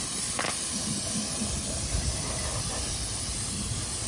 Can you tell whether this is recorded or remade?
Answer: recorded